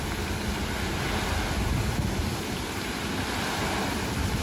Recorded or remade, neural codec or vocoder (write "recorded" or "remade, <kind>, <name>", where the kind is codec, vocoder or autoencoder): recorded